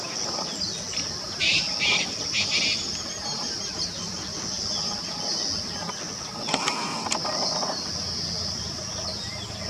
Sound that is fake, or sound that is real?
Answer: real